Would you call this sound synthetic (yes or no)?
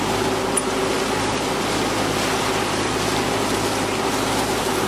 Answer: no